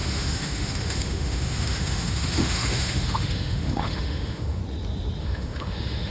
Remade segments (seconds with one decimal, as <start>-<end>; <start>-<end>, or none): 0.0-4.6; 5.2-6.1